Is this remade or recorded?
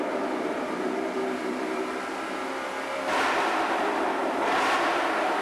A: remade